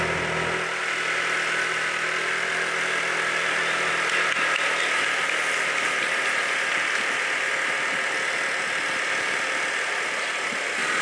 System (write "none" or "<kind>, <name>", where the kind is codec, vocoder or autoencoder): none